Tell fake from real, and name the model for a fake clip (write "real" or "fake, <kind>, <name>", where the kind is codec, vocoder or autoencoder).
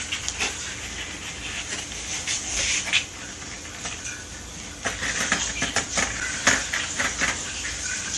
fake, vocoder, BigVGAN v2